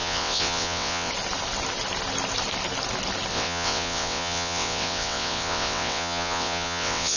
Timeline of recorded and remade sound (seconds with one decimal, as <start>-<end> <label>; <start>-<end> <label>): 0.0-1.1 remade; 1.1-3.3 recorded; 3.3-7.2 remade